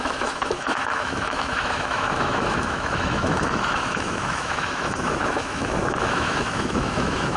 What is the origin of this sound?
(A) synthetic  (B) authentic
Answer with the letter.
A